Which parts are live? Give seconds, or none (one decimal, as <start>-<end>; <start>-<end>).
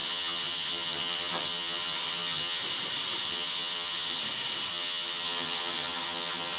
2.6-3.2; 4.2-4.7